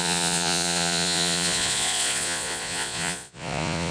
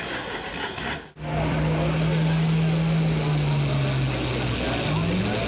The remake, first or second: first